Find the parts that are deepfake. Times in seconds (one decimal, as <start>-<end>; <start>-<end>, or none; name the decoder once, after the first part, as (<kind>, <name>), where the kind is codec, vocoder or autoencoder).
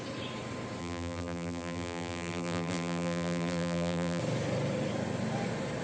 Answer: 0.8-4.2 (vocoder, BigVGAN v2)